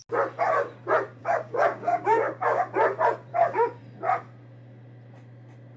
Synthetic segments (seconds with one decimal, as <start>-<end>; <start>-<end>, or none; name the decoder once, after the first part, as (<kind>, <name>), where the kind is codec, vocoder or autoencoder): 1.2-2.6 (codec, DAC); 3.3-3.8